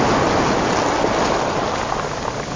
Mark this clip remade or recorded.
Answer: recorded